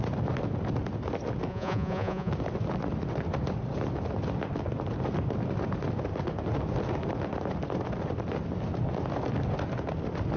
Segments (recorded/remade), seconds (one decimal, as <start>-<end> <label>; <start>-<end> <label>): 0.0-1.5 recorded; 1.5-2.3 remade; 2.3-10.4 recorded